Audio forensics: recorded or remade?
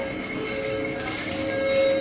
recorded